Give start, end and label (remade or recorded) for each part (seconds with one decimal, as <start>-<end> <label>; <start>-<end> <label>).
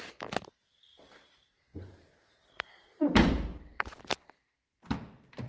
0.0-0.9 recorded; 0.9-4.0 remade; 4.0-5.5 recorded